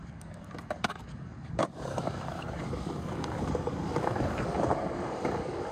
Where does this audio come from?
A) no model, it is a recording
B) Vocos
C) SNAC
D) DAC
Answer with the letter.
D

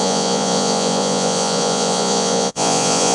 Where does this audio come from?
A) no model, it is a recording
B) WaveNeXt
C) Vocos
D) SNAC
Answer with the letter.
C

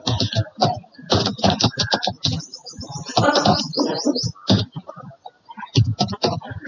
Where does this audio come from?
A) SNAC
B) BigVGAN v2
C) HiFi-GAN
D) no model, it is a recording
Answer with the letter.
D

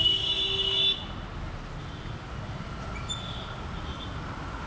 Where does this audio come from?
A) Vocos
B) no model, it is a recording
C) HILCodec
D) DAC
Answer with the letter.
B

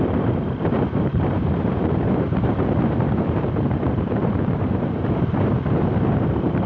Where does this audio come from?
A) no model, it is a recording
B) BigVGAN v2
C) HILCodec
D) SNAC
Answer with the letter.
B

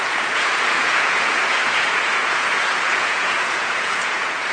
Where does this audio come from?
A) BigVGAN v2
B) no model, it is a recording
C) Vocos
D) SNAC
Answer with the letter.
C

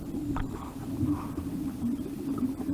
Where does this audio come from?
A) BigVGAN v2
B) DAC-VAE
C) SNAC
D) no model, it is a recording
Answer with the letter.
A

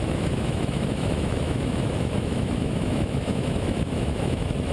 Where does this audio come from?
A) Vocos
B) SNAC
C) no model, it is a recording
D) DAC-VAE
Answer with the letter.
D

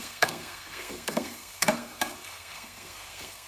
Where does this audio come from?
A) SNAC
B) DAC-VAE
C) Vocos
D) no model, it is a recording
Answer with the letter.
A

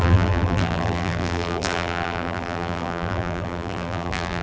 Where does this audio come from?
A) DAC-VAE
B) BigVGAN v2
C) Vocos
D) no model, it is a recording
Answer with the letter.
B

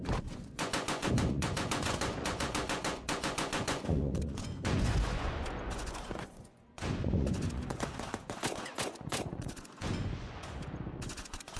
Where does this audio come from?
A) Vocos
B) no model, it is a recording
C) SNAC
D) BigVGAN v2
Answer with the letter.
A